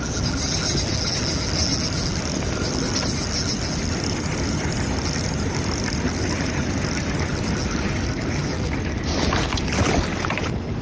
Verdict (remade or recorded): recorded